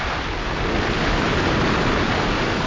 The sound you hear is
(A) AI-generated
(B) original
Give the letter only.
B